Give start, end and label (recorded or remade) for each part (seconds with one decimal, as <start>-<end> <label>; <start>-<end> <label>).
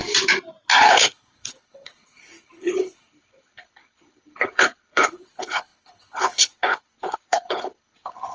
0.0-0.8 recorded; 0.8-8.3 remade